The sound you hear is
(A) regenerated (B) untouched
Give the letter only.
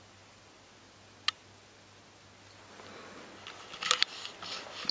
B